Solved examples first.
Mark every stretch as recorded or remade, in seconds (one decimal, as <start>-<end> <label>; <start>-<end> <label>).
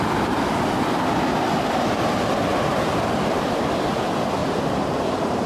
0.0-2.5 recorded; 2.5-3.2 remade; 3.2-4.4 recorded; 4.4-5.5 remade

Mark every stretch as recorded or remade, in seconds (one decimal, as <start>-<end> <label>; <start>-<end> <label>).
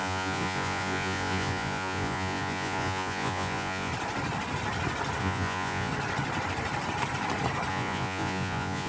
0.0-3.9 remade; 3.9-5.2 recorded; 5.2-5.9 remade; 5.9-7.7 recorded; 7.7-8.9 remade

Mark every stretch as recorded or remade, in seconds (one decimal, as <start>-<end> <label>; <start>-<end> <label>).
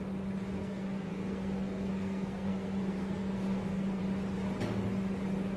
0.0-0.6 recorded; 0.6-4.0 remade; 4.0-5.6 recorded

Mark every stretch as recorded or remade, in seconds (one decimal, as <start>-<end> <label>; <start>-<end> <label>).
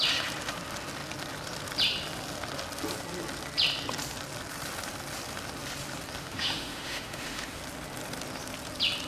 0.0-6.2 recorded; 6.2-7.6 remade; 7.6-9.1 recorded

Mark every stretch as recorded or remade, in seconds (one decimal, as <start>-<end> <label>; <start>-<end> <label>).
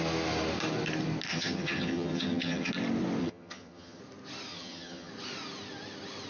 0.0-1.3 recorded; 1.3-2.7 remade; 2.7-3.2 recorded; 3.2-4.0 remade; 4.0-4.5 recorded; 4.5-5.1 remade; 5.1-6.3 recorded